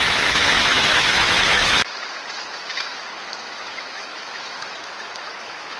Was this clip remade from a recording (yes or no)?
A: yes